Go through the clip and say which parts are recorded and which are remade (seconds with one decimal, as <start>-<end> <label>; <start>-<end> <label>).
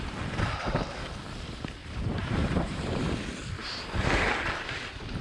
0.0-1.8 recorded; 1.8-3.0 remade; 3.0-3.6 recorded; 3.6-4.3 remade; 4.3-5.2 recorded